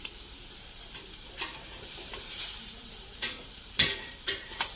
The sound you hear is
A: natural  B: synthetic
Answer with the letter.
B